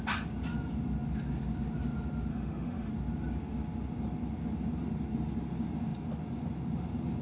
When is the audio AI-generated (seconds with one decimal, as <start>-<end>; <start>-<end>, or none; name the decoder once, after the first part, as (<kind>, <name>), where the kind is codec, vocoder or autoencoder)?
2.3-2.9 (autoencoder, DAC-VAE)